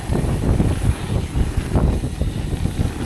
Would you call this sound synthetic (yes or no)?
no